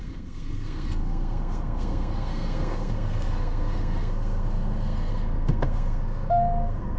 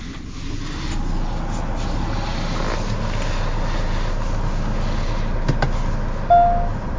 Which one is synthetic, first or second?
first